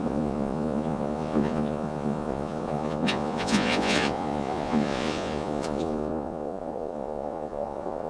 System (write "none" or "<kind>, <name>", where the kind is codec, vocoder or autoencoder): vocoder, Vocos